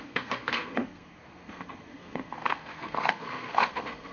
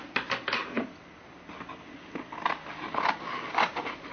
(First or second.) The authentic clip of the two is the second